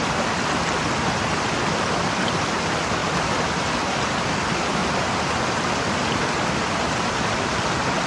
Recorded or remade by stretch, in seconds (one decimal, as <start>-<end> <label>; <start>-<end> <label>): 0.0-3.0 recorded; 3.0-3.7 remade; 3.7-4.8 recorded; 4.8-5.4 remade; 5.4-8.1 recorded